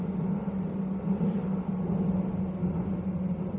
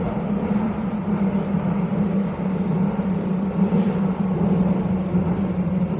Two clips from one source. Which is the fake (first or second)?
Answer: second